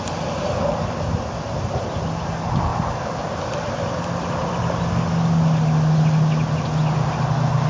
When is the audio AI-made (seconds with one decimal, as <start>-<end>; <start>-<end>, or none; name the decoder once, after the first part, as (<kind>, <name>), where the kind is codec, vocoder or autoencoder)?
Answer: none